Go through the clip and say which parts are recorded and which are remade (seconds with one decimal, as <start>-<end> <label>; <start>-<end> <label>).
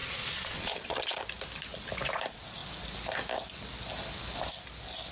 0.0-1.2 remade; 1.2-5.1 recorded